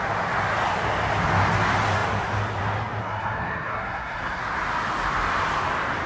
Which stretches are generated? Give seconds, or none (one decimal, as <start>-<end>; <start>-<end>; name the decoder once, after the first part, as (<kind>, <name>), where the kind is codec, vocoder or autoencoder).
3.0-4.4 (codec, SNAC)